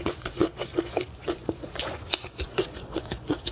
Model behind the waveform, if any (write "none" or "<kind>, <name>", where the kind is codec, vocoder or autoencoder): vocoder, Vocos